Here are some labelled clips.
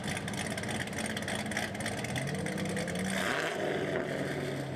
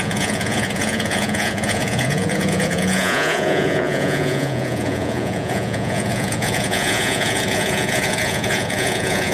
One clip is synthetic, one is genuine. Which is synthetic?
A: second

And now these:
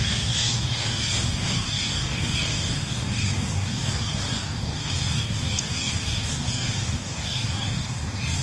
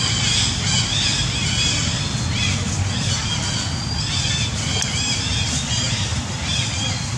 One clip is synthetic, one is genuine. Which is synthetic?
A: first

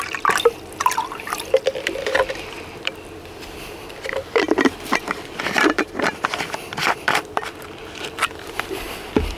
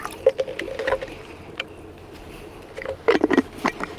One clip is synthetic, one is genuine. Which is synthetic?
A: first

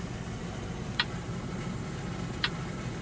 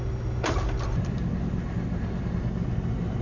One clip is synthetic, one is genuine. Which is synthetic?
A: first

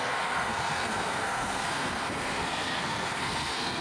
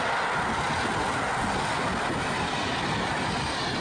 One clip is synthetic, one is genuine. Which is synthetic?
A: first